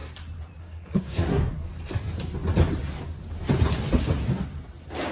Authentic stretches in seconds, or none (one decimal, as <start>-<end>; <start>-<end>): 0.0-0.6; 1.7-5.1